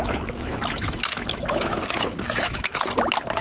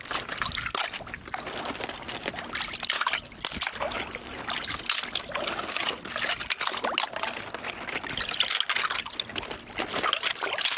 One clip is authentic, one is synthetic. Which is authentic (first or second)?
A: second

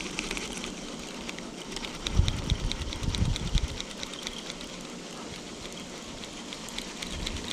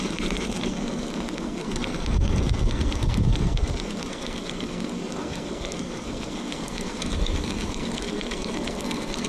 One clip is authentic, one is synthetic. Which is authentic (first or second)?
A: first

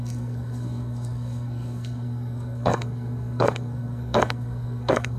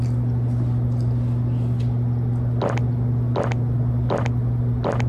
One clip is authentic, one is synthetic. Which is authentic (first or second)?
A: second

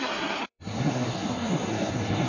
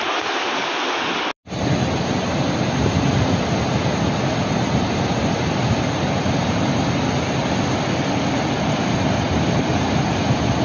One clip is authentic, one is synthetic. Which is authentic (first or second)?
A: second